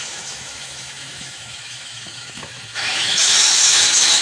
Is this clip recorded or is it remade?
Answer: remade